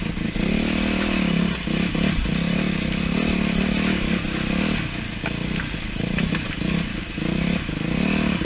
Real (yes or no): yes